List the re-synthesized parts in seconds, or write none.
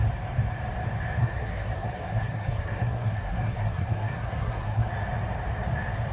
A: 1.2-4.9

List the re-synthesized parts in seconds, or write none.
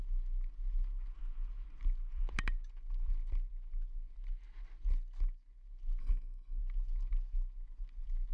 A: 6.0-6.6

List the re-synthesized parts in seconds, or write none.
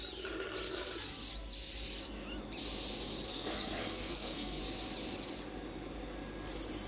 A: 3.3-4.6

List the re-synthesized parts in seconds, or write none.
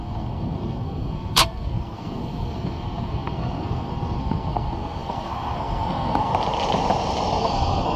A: 0.0-6.3; 7.4-8.0